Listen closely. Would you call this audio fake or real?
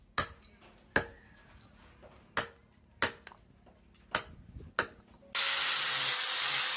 real